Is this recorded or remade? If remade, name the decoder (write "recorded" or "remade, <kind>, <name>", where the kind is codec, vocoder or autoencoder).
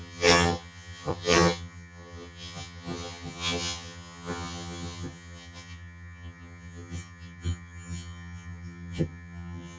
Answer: remade, vocoder, HiFi-GAN